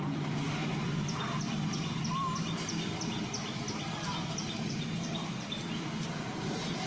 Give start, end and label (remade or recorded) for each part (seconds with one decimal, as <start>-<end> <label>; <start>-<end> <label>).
0.0-6.9 recorded